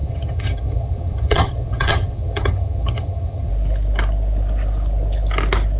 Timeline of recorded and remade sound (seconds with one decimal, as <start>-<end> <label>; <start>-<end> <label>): 0.0-3.5 remade; 3.5-5.8 recorded